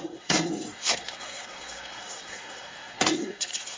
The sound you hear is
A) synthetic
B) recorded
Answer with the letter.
A